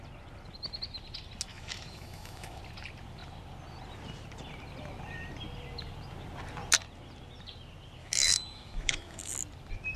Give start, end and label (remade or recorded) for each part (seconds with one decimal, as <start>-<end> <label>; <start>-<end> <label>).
0.0-1.5 recorded; 1.5-2.6 remade; 2.6-8.0 recorded; 8.0-9.3 remade; 9.3-10.0 recorded